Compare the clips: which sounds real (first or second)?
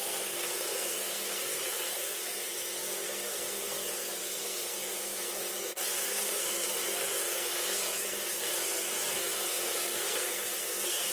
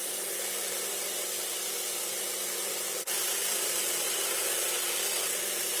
second